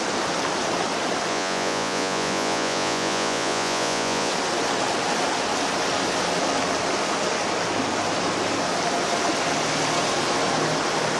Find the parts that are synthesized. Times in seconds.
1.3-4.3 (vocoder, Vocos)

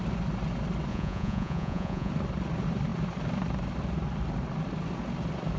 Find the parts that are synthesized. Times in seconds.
0.9-2.1 (vocoder, Vocos)

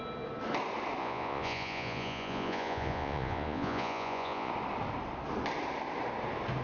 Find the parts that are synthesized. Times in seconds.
1.0-4.5 (vocoder, Vocos)

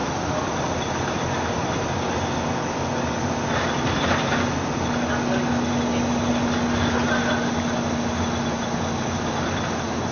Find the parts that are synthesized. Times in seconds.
none

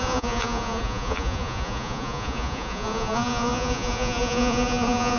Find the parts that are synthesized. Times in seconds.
0.0-5.2 (vocoder, Vocos)

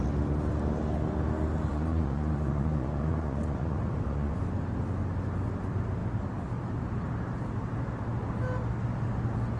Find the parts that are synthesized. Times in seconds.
1.7-4.4 (vocoder, Vocos)

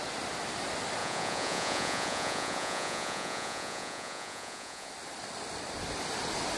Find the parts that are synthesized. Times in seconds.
1.0-4.9 (vocoder, Vocos)